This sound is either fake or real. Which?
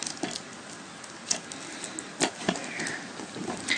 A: real